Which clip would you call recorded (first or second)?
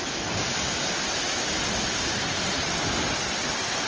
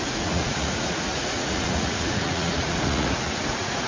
first